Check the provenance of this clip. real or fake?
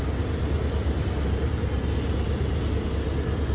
real